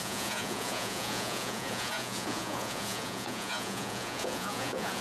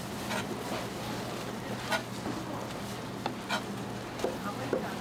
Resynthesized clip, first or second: first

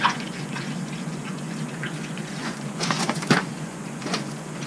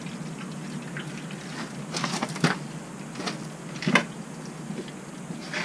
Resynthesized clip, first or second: first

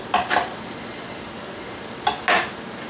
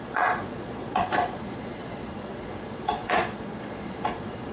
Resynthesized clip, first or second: second